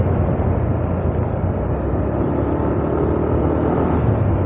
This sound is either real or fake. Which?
real